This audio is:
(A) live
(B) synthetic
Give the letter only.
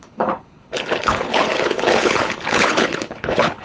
B